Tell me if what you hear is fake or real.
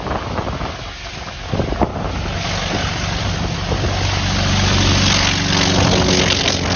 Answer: real